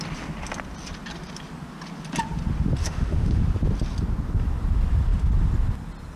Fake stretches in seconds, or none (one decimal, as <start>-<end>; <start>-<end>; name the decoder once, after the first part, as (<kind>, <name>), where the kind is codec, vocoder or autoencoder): 2.8-3.4 (autoencoder, DAC-VAE)